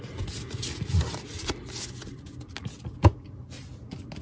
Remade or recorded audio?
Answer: recorded